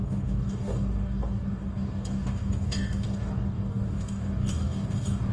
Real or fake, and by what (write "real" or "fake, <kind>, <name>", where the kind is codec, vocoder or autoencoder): fake, codec, DAC